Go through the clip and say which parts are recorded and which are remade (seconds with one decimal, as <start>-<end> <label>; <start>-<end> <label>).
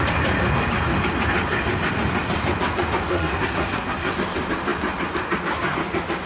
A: 0.0-3.1 recorded; 3.1-4.1 remade; 4.1-6.3 recorded